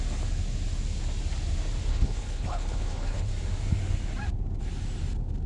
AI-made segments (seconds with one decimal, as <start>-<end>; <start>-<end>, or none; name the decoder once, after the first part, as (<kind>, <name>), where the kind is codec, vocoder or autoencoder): 1.9-3.3 (codec, HILCodec)